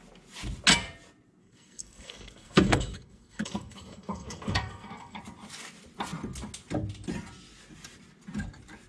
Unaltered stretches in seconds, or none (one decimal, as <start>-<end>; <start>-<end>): 0.0-1.4; 5.2-8.9